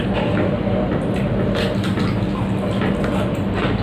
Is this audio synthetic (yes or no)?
yes